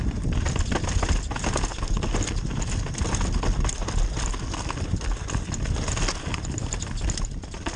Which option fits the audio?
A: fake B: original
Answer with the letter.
B